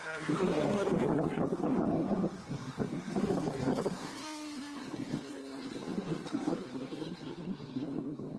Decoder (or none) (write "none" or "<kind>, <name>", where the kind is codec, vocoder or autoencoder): codec, SNAC